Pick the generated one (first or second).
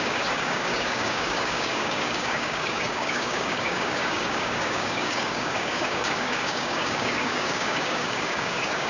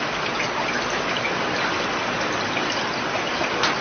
first